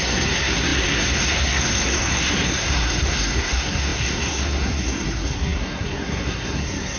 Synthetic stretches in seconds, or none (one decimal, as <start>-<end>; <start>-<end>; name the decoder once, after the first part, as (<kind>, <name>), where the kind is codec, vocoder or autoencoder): 0.0-7.0 (codec, SNAC)